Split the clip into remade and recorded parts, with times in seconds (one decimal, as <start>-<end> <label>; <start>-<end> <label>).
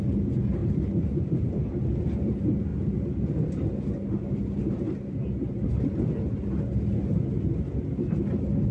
0.0-0.6 recorded; 0.6-1.8 remade; 1.8-8.7 recorded